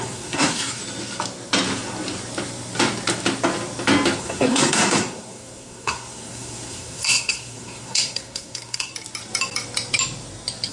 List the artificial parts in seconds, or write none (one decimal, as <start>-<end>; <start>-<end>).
0.0-0.8; 4.2-8.9